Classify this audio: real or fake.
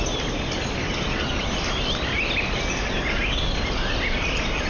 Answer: real